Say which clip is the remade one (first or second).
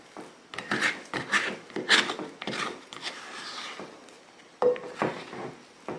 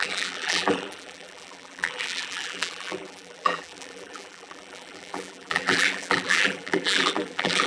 second